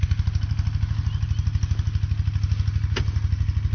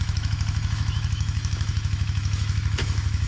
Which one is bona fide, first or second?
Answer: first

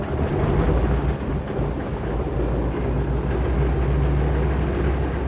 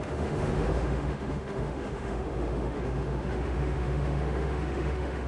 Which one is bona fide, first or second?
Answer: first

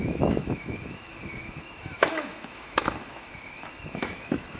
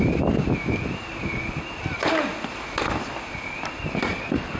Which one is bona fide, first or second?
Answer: second